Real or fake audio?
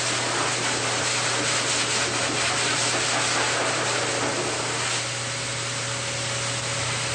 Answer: real